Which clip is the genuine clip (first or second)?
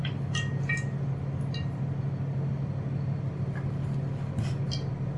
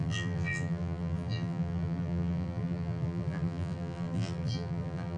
first